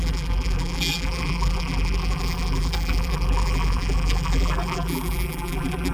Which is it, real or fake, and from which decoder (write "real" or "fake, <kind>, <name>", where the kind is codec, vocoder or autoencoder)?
fake, vocoder, BigVGAN v2